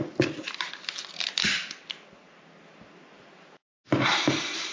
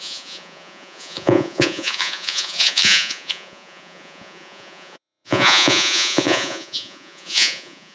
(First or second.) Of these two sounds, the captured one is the first